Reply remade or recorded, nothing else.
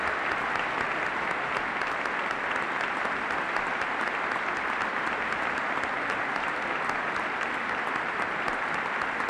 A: recorded